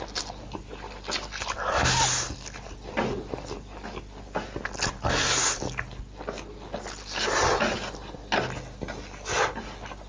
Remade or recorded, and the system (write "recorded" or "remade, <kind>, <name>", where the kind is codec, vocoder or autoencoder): recorded